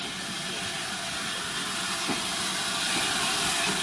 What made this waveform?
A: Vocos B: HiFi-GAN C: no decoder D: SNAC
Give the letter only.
C